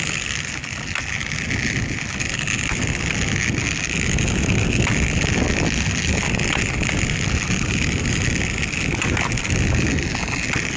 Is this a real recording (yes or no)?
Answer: yes